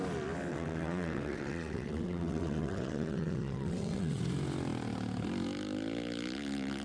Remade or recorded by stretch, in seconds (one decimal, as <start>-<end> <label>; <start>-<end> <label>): 0.0-0.5 recorded; 0.5-4.2 remade; 4.2-6.8 recorded